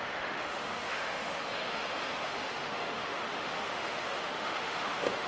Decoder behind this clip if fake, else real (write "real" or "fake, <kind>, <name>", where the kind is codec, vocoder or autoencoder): fake, autoencoder, DAC-VAE